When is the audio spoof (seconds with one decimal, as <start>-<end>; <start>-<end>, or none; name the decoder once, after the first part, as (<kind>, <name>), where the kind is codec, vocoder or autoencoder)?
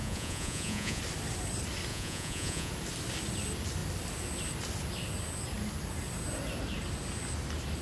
0.0-1.0 (vocoder, Vocos); 1.9-2.7